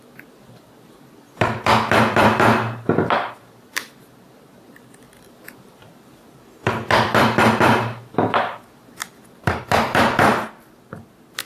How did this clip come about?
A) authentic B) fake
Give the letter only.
B